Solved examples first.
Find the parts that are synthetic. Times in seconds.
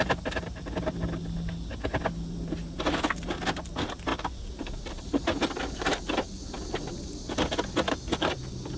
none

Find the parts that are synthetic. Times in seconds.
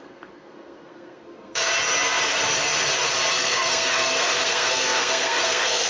0.0-1.7; 3.3-5.9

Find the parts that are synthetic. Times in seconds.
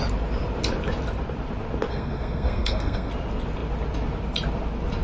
1.9-3.1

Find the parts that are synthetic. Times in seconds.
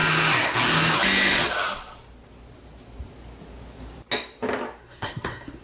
4.8-5.6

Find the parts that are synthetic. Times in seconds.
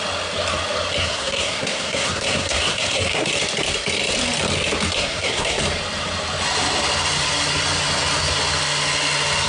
1.0-3.3; 5.0-5.6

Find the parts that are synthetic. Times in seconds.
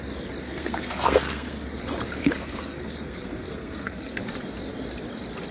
0.4-1.8; 2.2-4.2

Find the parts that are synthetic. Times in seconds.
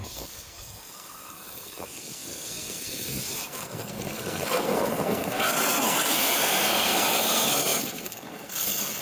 0.0-9.0